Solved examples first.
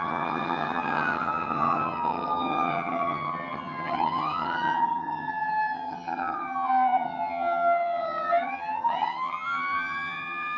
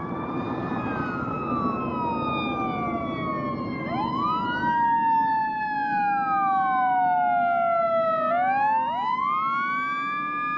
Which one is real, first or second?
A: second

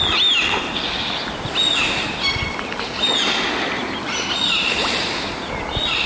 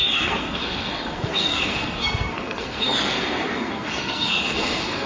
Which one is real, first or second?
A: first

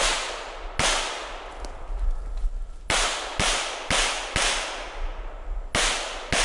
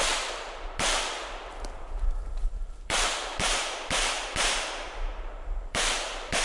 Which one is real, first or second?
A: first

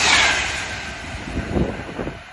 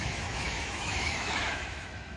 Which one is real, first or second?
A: first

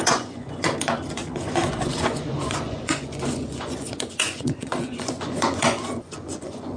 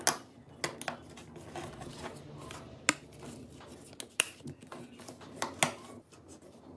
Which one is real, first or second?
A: second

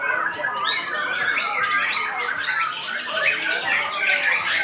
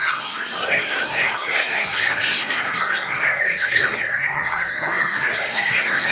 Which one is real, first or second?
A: first